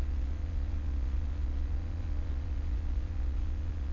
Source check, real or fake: fake